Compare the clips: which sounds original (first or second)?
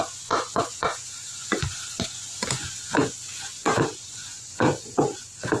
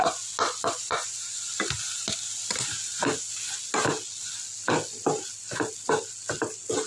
second